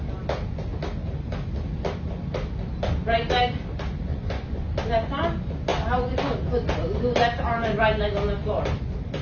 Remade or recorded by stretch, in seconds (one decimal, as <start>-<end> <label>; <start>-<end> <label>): 0.0-4.1 recorded; 4.1-4.8 remade; 4.8-9.2 recorded